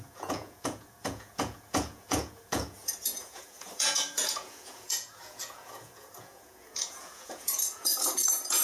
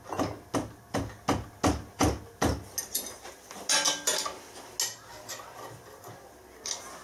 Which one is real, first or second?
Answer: second